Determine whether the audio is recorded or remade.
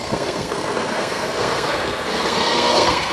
remade